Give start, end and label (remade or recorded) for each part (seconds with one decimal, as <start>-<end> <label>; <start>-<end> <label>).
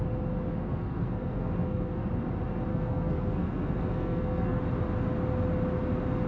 0.0-0.5 recorded; 0.5-2.1 remade; 2.1-2.7 recorded; 2.7-4.6 remade; 4.6-6.3 recorded